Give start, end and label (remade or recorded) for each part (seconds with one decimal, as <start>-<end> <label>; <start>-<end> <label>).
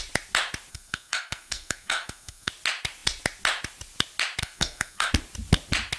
0.0-0.7 recorded; 0.7-2.5 remade; 2.5-4.4 recorded; 4.4-5.1 remade; 5.1-6.0 recorded